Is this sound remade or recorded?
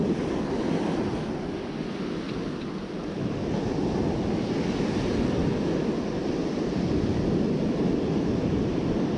recorded